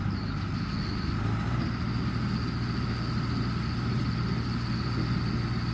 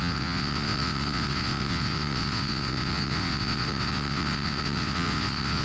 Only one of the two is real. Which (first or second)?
first